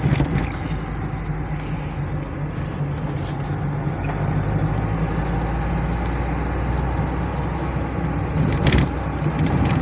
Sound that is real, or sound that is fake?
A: real